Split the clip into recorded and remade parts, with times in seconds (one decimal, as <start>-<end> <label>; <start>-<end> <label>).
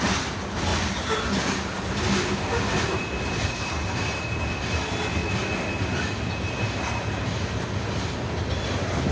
0.0-9.1 recorded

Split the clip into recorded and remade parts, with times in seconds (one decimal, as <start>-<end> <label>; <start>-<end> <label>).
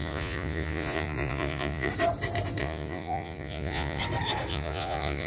0.0-1.9 remade; 1.9-2.6 recorded; 2.6-4.0 remade; 4.0-4.5 recorded; 4.5-5.3 remade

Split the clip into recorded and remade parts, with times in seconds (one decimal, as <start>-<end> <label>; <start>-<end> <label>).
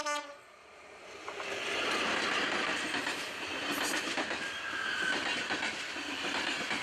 0.0-6.8 recorded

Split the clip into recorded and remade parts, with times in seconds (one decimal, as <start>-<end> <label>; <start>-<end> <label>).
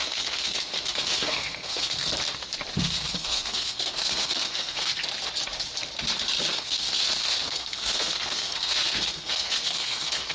0.0-2.1 remade; 2.1-2.8 recorded; 2.8-5.0 remade; 5.0-6.5 recorded; 6.5-10.3 remade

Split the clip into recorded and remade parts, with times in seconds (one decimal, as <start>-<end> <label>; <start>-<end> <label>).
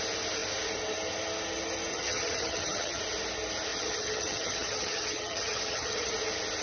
0.0-1.9 recorded; 1.9-3.0 remade; 3.0-3.7 recorded; 3.7-6.1 remade; 6.1-6.6 recorded